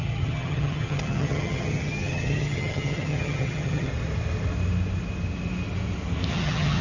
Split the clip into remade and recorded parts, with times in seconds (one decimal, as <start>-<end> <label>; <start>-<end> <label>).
0.0-3.9 remade; 3.9-6.3 recorded; 6.3-6.8 remade